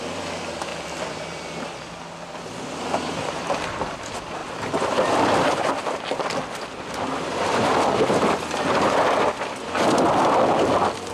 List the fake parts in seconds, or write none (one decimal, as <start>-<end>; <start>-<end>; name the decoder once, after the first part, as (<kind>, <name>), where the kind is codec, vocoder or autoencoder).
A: 0.0-0.7 (vocoder, BigVGAN v2); 2.1-11.1